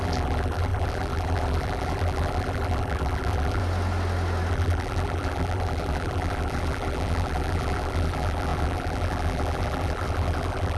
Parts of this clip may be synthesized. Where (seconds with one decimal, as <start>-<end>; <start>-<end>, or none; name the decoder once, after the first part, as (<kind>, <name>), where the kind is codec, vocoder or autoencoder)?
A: 0.0-3.6 (vocoder, BigVGAN v2); 4.5-10.8